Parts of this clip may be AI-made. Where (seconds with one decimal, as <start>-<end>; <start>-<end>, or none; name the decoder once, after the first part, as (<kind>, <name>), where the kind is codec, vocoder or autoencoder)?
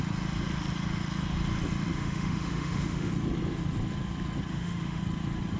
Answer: 1.9-3.1 (autoencoder, DAC-VAE); 4.5-5.0